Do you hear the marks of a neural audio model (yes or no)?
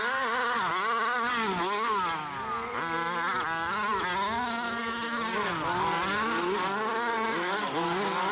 no